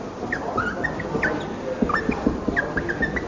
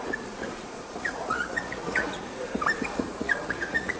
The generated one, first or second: second